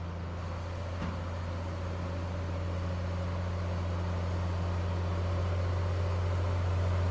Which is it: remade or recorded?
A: recorded